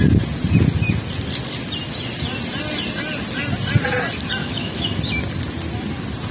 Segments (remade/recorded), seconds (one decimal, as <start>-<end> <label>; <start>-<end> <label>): 0.0-4.4 recorded; 4.4-5.0 remade; 5.0-6.3 recorded

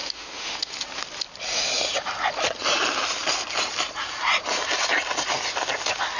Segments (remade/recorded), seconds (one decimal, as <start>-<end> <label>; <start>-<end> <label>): 0.0-0.7 remade; 0.7-6.2 recorded

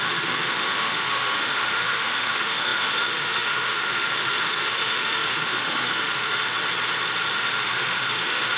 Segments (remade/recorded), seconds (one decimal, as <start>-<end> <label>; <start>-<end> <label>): 0.0-6.5 remade; 6.5-7.3 recorded; 7.3-8.6 remade